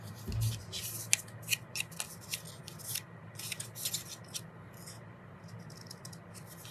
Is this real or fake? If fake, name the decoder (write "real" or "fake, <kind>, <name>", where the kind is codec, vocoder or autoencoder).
real